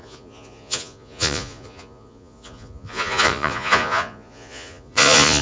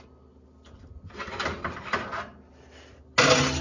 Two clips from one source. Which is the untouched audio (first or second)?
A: second